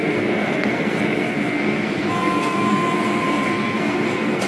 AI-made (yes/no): yes